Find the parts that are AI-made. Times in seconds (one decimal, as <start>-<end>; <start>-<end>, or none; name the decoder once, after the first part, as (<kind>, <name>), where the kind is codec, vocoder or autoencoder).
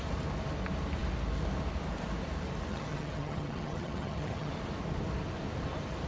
2.7-4.5 (vocoder, HiFi-GAN)